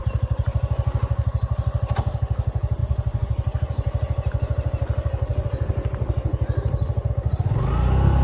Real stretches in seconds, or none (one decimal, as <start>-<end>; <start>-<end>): 0.0-8.2